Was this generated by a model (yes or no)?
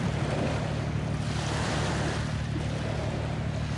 no